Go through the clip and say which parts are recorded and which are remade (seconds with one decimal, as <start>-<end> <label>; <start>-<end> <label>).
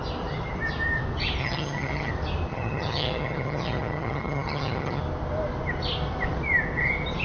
0.0-1.4 recorded; 1.4-2.1 remade; 2.1-2.5 recorded; 2.5-5.0 remade; 5.0-7.2 recorded